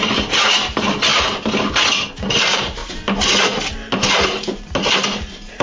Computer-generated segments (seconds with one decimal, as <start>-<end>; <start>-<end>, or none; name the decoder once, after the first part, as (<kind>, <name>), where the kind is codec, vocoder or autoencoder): 0.0-1.1 (vocoder, BigVGAN v2); 2.3-2.8

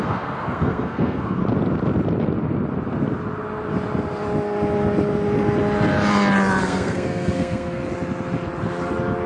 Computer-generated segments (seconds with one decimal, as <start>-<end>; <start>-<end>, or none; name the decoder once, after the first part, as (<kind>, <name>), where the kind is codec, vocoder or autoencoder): 0.0-1.4 (codec, SNAC); 6.6-7.8

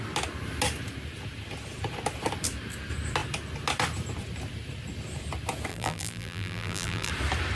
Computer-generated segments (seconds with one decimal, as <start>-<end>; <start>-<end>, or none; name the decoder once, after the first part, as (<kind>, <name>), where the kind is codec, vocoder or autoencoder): 5.7-7.1 (vocoder, BigVGAN v2)

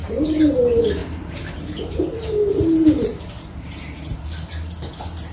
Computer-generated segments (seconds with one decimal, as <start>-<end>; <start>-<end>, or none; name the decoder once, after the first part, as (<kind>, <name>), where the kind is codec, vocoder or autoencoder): 0.0-0.6 (vocoder, BigVGAN v2); 1.0-4.2

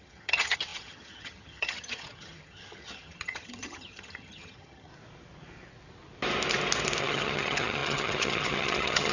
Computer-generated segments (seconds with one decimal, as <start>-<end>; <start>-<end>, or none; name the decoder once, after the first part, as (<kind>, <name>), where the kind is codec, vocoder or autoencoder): 0.0-4.9 (vocoder, HiFi-GAN); 7.0-9.1

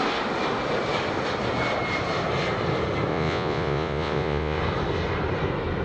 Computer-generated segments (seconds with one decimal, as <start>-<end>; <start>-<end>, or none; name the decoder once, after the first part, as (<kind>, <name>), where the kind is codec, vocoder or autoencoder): 3.1-4.6 (vocoder, Vocos)